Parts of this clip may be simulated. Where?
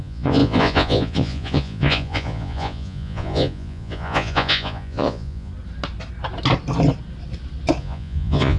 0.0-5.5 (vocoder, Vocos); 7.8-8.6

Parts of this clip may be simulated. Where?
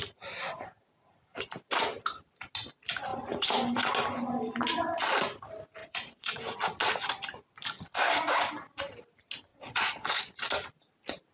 5.8-6.4 (vocoder, Vocos); 9.5-10.2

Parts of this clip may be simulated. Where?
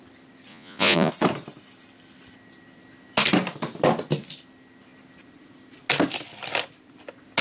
0.5-1.1 (vocoder, Vocos)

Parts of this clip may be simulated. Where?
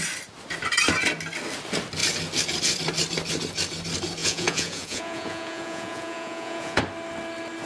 4.2-6.8 (vocoder, Vocos)